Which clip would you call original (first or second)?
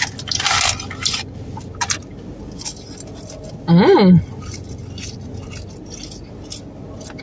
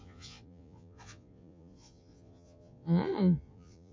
first